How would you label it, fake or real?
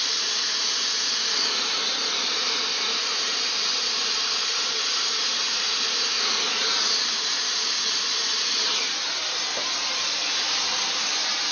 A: fake